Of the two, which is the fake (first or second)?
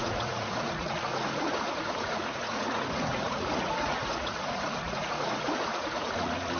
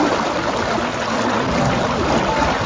first